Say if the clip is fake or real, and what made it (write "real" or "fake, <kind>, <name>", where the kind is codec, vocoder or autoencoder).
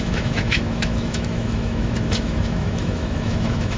fake, autoencoder, DAC-VAE